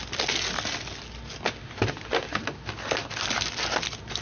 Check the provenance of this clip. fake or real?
real